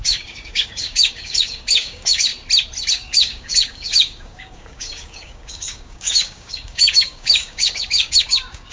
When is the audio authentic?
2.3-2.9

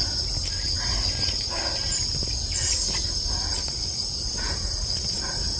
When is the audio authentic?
0.0-5.6

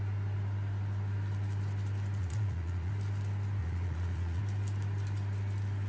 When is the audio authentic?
0.0-2.2; 2.9-3.6; 4.4-5.9

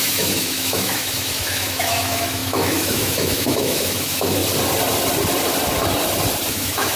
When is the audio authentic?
4.4-6.5

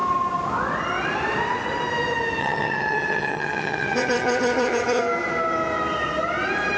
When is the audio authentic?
0.0-2.4; 5.0-6.8